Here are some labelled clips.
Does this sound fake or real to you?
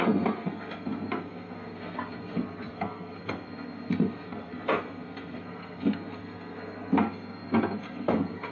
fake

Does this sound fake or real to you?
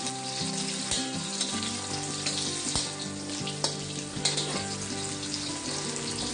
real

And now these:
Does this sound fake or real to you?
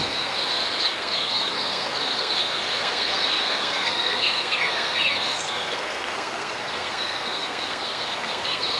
fake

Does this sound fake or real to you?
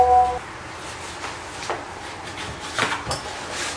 real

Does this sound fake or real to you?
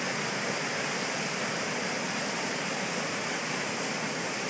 real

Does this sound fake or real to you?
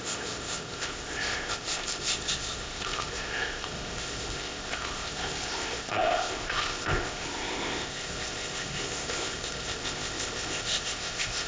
fake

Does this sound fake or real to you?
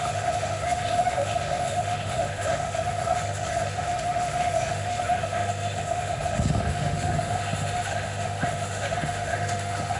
fake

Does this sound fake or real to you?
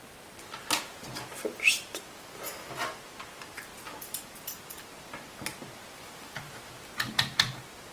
real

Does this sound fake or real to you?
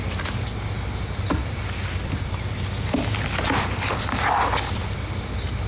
real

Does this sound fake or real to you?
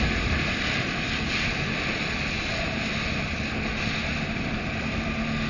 real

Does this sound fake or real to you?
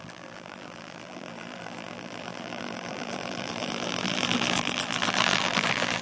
fake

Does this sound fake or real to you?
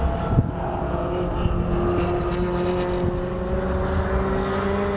real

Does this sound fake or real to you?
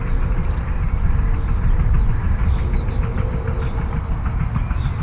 real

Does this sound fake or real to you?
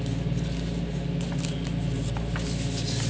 real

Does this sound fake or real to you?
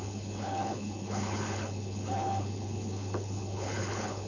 fake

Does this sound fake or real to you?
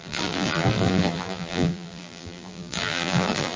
fake